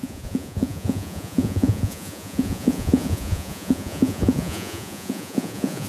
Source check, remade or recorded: remade